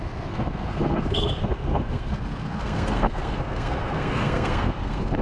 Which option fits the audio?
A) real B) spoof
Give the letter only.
B